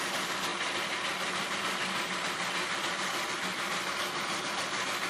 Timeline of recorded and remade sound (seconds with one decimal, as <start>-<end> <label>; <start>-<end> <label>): 0.0-5.1 recorded